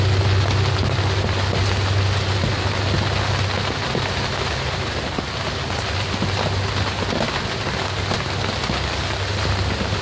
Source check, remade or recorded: recorded